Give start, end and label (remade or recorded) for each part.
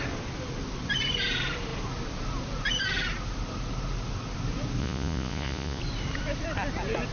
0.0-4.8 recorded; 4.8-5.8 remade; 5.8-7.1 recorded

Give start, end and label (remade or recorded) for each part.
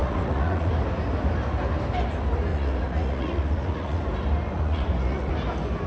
0.0-0.7 remade; 0.7-2.5 recorded; 2.5-4.0 remade; 4.0-4.5 recorded; 4.5-5.3 remade; 5.3-5.9 recorded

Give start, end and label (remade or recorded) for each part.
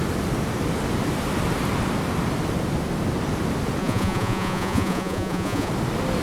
0.0-3.8 recorded; 3.8-5.7 remade; 5.7-6.2 recorded